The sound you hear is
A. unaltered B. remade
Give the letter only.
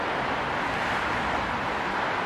A